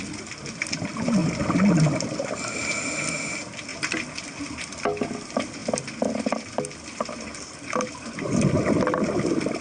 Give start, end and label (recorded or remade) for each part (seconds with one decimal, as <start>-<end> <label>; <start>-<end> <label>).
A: 0.0-9.6 recorded